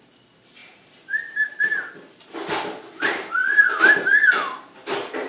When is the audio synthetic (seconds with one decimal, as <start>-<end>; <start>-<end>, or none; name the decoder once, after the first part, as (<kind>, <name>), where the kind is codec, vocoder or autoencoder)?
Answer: 0.6-1.6 (vocoder, BigVGAN v2); 3.4-4.0